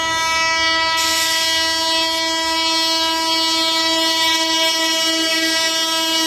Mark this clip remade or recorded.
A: recorded